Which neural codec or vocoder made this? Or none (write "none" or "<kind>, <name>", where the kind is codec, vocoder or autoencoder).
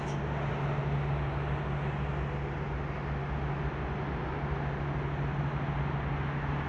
none